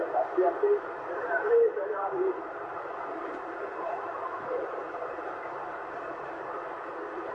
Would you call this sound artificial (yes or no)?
yes